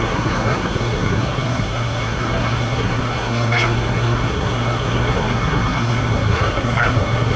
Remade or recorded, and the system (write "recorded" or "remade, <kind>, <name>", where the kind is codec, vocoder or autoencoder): remade, codec, SNAC